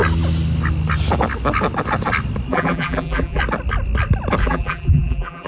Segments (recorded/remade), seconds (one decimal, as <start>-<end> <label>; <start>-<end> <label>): 0.0-2.5 recorded; 2.5-3.4 remade; 3.4-4.4 recorded; 4.4-5.5 remade